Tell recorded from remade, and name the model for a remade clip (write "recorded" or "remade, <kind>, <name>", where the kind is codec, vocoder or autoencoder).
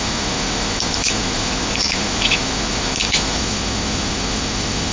remade, autoencoder, DAC-VAE